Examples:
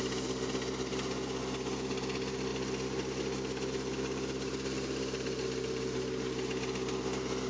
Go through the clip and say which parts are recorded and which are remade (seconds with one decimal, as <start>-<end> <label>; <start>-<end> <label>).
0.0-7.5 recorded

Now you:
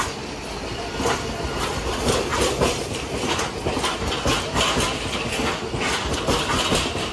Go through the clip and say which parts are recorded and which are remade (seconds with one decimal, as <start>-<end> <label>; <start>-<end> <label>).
0.0-7.1 recorded

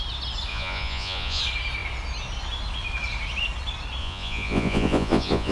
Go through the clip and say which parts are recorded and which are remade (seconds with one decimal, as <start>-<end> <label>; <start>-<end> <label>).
0.0-0.5 recorded; 0.5-1.4 remade; 1.4-4.0 recorded; 4.0-5.5 remade